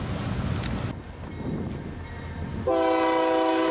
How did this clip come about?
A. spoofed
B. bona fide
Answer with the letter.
B